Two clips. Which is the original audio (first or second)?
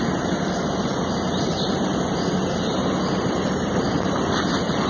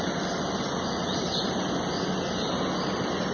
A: second